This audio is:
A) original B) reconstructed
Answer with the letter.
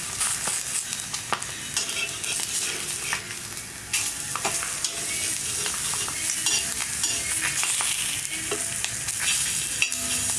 A